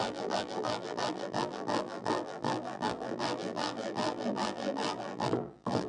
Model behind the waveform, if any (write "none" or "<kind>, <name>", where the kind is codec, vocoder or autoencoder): vocoder, BigVGAN v2